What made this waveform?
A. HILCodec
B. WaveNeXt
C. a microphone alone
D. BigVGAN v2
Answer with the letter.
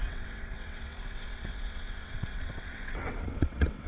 B